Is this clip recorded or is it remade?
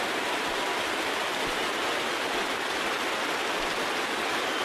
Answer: recorded